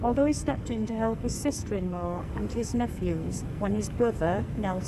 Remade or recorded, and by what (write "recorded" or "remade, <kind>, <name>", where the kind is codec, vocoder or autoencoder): remade, codec, SNAC